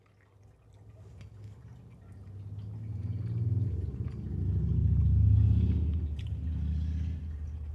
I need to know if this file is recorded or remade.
recorded